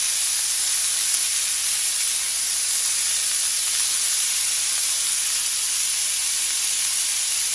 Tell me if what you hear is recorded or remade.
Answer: recorded